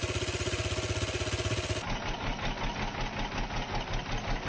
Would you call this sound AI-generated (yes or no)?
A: no